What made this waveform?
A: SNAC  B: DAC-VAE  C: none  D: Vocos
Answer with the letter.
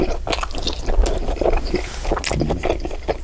C